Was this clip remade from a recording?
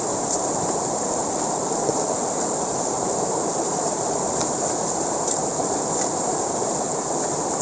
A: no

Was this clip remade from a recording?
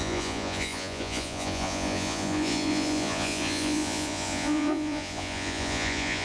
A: yes